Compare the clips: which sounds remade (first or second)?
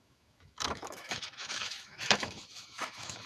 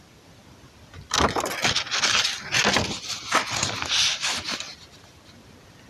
first